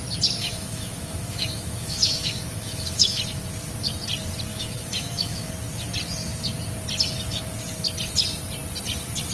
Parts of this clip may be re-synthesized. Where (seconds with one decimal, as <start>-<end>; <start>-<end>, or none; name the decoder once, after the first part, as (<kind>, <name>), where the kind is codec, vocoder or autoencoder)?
0.4-3.2 (autoencoder, DAC-VAE); 4.5-5.5